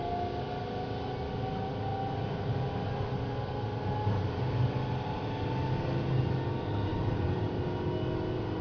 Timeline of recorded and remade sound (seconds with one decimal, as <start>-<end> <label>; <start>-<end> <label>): 0.0-6.9 recorded; 6.9-7.6 remade; 7.6-8.6 recorded